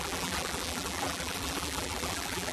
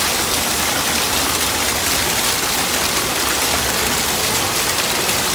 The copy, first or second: first